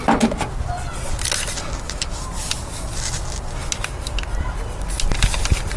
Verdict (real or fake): real